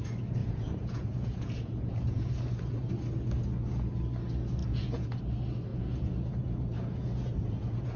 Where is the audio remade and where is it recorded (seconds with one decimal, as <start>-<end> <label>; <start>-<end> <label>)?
0.0-0.4 recorded; 0.4-2.9 remade; 2.9-4.6 recorded; 4.6-5.2 remade; 5.2-5.7 recorded; 5.7-8.0 remade